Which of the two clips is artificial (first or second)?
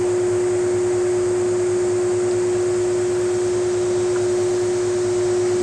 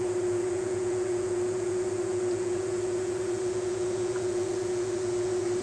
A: second